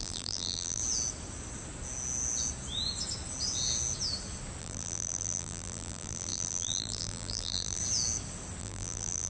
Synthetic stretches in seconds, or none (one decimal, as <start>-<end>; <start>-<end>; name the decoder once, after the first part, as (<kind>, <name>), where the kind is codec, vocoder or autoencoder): 0.0-0.8 (vocoder, BigVGAN v2); 4.6-7.8; 8.6-9.3

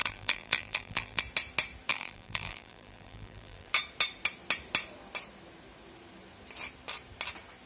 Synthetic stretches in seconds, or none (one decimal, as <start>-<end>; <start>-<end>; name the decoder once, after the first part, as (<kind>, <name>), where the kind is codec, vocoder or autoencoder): 0.0-1.2 (vocoder, BigVGAN v2); 1.9-3.7

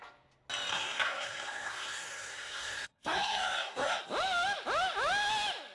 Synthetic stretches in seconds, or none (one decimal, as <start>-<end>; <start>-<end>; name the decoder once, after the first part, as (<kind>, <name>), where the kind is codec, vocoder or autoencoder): 0.7-4.0 (codec, SNAC)

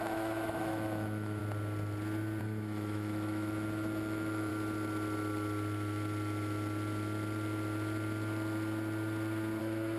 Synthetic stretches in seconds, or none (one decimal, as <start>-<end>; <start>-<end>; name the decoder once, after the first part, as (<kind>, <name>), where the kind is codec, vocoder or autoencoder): 0.0-1.4 (autoencoder, DAC-VAE); 2.4-4.5; 9.6-10.0